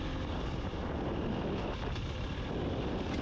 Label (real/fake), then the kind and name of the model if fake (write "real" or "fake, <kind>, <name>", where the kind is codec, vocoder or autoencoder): real